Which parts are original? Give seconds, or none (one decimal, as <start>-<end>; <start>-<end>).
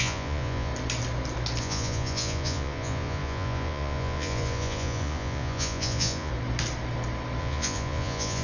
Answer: 0.7-1.6; 6.3-7.4